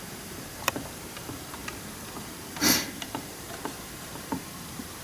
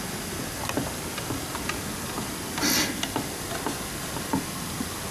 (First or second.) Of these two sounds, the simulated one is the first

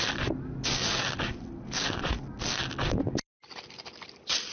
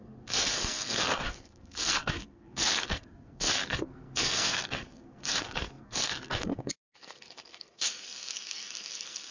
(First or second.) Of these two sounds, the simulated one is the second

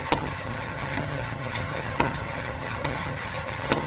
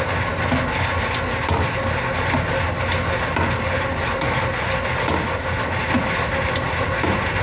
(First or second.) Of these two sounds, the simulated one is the first